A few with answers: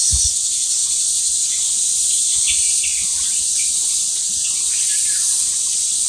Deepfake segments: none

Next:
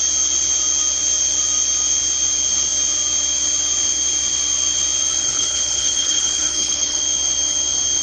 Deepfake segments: 5.2-7.0 (codec, HILCodec)

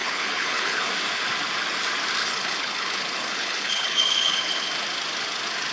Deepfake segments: 0.0-0.9 (codec, HILCodec); 2.2-4.7

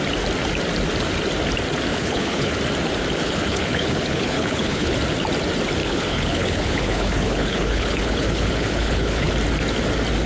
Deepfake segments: 1.9-2.5 (codec, HILCodec); 3.2-4.9; 5.8-9.3

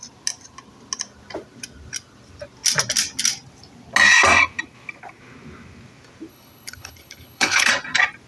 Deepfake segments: 6.3-7.7 (codec, HILCodec)